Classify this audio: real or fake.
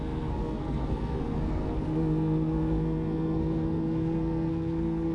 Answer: fake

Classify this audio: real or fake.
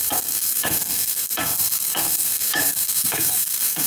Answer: fake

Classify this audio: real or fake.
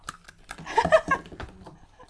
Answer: real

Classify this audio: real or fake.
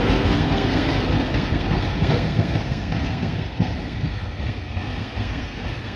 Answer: fake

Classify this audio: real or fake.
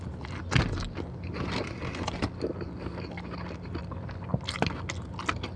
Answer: real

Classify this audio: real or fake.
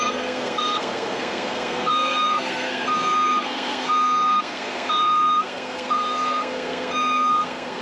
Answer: fake